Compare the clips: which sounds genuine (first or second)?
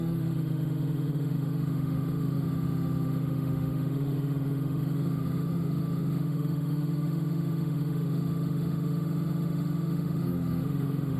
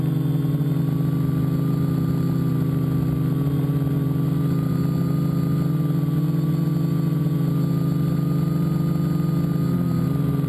second